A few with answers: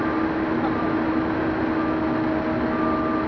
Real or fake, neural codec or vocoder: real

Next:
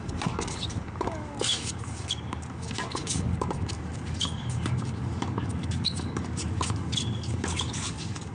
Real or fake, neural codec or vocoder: fake, codec, DAC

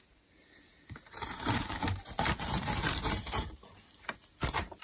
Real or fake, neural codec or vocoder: fake, vocoder, BigVGAN v2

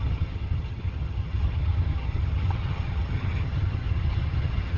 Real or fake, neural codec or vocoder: fake, vocoder, HiFi-GAN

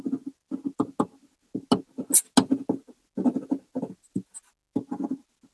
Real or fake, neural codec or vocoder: real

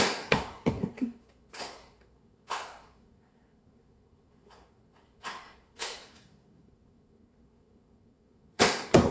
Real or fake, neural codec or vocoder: fake, codec, SNAC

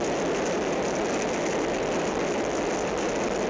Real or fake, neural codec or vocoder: real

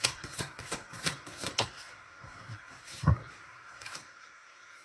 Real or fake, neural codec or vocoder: fake, codec, SNAC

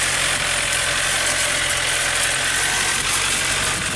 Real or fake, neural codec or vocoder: real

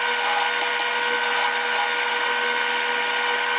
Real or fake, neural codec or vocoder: real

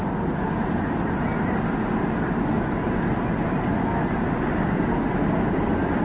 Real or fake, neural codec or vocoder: real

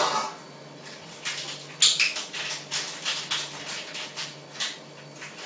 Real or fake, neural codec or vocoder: real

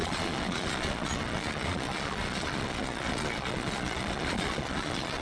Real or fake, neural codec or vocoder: fake, vocoder, Vocos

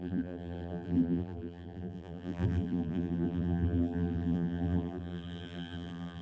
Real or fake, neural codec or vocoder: fake, vocoder, BigVGAN v2